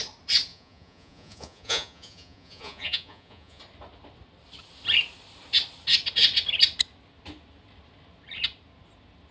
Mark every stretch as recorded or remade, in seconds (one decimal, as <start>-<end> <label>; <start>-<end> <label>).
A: 0.0-0.5 recorded; 0.5-3.6 remade; 3.6-9.3 recorded